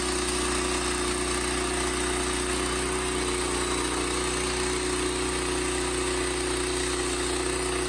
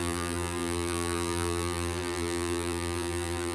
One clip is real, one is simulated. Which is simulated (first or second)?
second